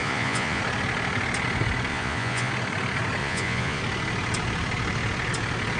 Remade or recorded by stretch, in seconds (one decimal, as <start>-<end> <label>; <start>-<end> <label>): 0.0-0.6 remade; 0.6-1.9 recorded; 1.9-2.5 remade; 2.5-3.2 recorded; 3.2-3.8 remade; 3.8-5.8 recorded